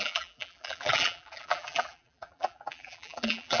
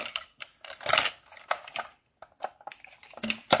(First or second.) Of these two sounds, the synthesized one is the first